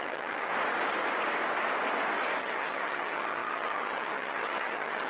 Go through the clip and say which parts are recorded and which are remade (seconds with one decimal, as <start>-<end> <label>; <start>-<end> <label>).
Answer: 0.0-0.5 remade; 0.5-2.4 recorded; 2.4-5.1 remade

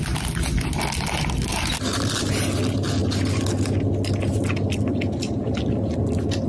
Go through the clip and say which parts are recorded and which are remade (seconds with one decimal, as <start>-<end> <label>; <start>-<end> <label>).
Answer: 0.0-6.5 recorded

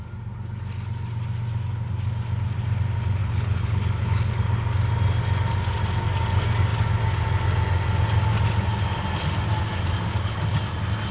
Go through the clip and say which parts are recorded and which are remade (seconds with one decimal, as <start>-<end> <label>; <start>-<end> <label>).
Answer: 0.0-3.2 recorded; 3.2-4.3 remade; 4.3-10.1 recorded; 10.1-10.6 remade; 10.6-11.1 recorded

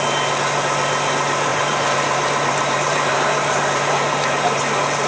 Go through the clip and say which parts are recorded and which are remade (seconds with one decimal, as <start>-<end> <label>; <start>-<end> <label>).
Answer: 0.0-1.5 recorded; 1.5-4.6 remade; 4.6-5.1 recorded